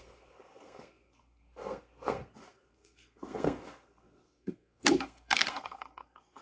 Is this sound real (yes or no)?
no